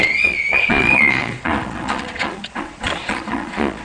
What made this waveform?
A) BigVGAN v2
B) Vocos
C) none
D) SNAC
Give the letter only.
B